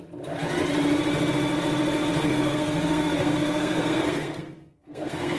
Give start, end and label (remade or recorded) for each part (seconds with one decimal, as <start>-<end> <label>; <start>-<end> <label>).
0.0-2.2 recorded; 2.2-5.4 remade